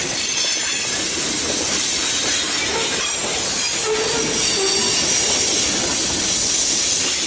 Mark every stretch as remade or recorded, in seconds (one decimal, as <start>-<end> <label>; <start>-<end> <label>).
0.0-7.3 recorded